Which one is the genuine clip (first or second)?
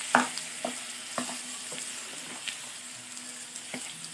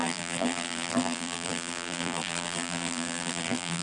first